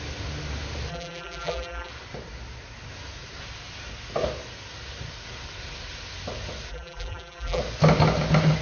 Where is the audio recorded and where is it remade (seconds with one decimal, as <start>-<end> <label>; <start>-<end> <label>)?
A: 0.0-0.9 recorded; 0.9-1.9 remade; 1.9-6.7 recorded; 6.7-7.6 remade; 7.6-8.6 recorded